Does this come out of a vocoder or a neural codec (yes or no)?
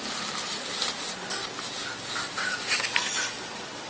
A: yes